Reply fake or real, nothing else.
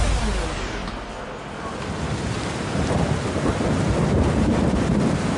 real